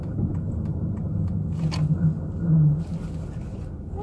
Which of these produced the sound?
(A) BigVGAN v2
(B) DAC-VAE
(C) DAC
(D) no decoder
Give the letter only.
D